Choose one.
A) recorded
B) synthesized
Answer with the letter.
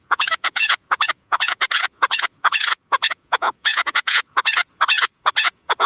B